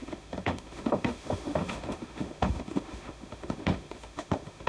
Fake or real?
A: fake